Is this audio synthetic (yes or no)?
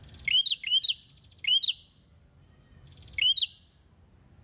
no